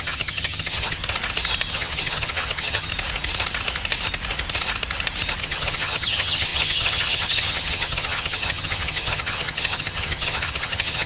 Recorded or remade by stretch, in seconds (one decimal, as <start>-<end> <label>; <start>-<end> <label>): 0.0-1.0 remade; 1.0-1.7 recorded; 1.7-2.9 remade; 2.9-5.4 recorded; 5.4-11.1 remade